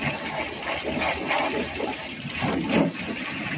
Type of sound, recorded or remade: recorded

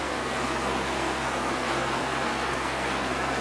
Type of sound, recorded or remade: remade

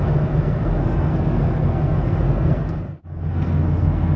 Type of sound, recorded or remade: remade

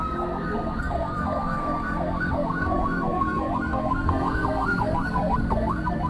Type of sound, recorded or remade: remade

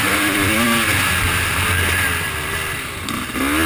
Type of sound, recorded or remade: recorded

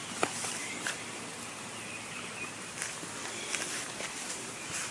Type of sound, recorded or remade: recorded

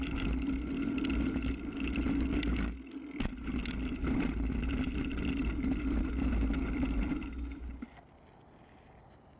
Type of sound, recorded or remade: recorded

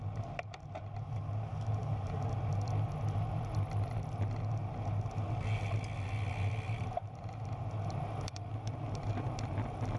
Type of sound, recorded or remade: recorded